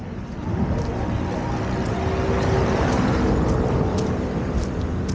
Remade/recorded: recorded